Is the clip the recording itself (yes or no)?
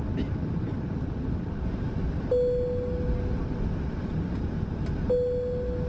yes